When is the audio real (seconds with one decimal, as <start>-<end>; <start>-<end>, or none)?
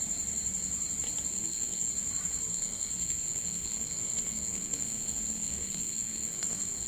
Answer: 0.0-1.3; 1.9-2.5